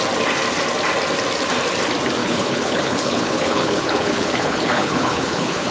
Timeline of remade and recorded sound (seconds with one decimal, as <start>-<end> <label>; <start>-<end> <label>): 0.0-2.2 recorded; 2.2-5.7 remade